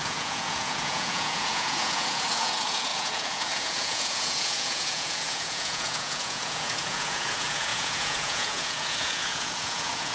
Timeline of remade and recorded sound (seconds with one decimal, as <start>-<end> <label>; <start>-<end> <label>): 0.0-10.1 remade